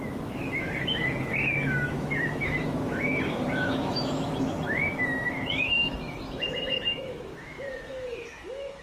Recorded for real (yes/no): no